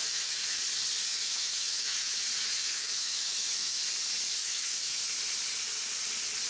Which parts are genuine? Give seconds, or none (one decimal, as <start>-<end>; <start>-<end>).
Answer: 0.6-1.1; 2.1-2.5; 3.8-4.4; 5.0-6.5